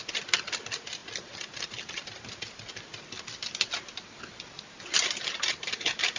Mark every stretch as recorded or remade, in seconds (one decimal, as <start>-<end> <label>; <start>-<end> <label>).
0.0-6.2 recorded